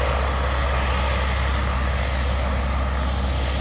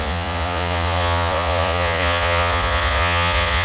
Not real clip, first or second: second